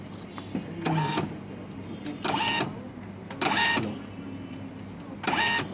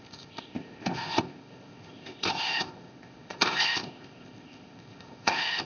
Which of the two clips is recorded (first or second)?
first